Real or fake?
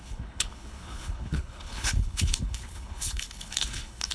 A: fake